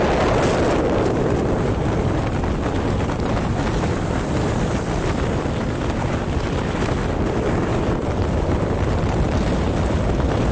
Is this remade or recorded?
recorded